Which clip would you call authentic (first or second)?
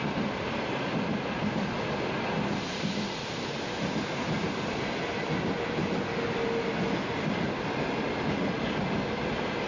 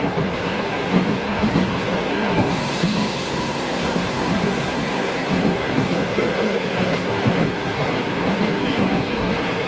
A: first